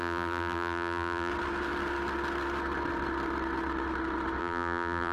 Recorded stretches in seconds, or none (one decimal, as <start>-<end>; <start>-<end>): 1.3-4.4